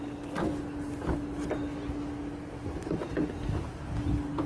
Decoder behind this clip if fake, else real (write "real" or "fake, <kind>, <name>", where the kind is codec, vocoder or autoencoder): real